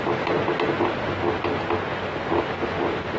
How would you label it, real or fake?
real